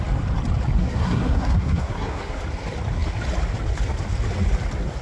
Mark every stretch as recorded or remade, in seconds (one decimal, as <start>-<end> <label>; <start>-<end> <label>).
0.0-0.8 recorded; 0.8-2.4 remade; 2.4-5.0 recorded